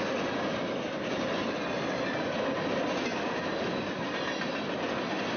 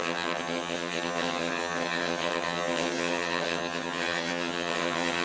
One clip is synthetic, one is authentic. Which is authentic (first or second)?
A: first